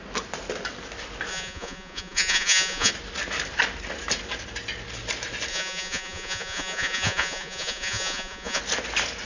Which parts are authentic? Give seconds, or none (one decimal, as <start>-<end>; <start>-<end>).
0.0-1.3; 2.9-5.5; 8.6-9.3